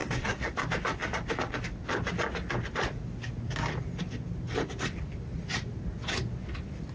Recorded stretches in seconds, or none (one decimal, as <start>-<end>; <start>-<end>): 0.5-6.9